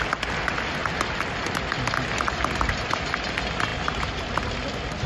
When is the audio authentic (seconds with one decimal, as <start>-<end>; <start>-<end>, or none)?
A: 0.0-5.1